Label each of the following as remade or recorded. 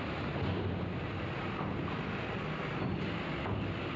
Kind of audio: recorded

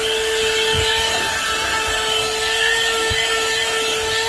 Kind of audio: recorded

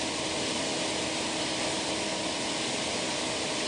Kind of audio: recorded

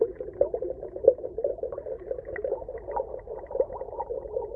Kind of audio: recorded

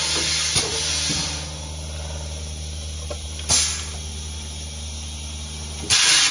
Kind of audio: recorded